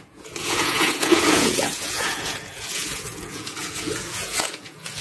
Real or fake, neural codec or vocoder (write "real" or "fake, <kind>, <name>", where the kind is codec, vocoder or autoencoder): fake, vocoder, Vocos